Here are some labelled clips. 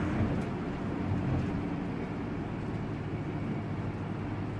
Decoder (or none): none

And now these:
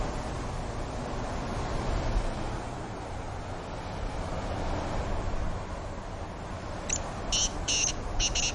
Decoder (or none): none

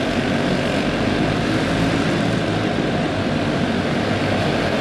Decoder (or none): none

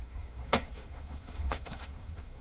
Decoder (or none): codec, SNAC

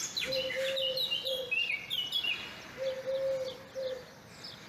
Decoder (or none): none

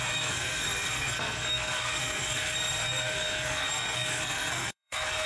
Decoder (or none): codec, SNAC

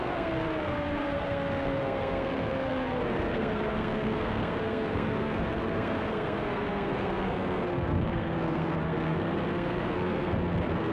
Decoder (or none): codec, SNAC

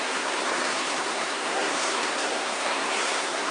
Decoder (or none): codec, SNAC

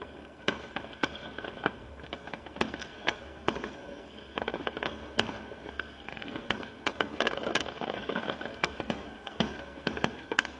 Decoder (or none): codec, SNAC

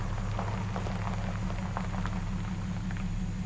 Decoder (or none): none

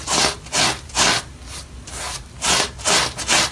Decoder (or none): none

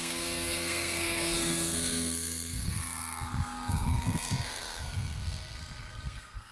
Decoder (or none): codec, SNAC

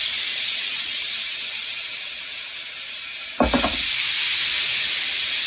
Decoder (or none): none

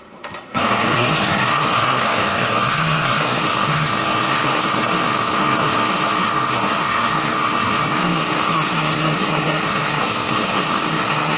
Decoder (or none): codec, SNAC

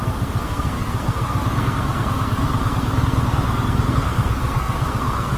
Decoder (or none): codec, SNAC